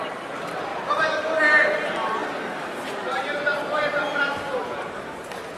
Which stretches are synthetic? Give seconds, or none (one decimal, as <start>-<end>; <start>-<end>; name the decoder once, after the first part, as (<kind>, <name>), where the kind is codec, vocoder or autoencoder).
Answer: 0.7-1.2 (vocoder, BigVGAN v2); 2.2-3.8